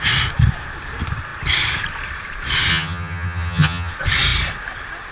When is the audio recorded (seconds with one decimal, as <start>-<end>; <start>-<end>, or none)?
0.0-2.7; 3.9-5.1